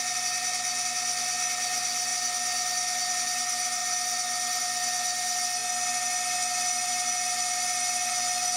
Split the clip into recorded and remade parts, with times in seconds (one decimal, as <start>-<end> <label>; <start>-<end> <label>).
0.0-8.6 recorded